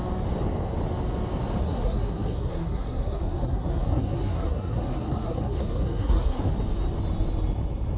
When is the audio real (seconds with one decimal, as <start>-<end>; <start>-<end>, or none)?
0.0-1.6; 6.4-8.0